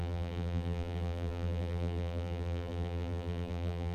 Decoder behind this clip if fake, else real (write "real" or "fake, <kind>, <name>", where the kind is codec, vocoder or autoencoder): fake, vocoder, BigVGAN v2